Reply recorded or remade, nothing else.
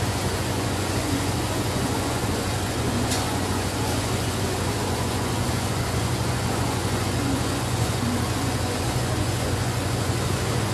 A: remade